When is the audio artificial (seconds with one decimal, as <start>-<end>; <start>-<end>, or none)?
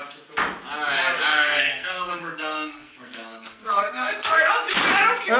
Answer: 1.3-4.5